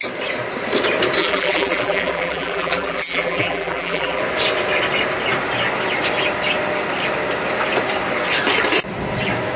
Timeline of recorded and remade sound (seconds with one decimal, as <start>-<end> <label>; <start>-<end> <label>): 0.0-1.2 recorded; 1.2-4.2 remade; 4.2-9.6 recorded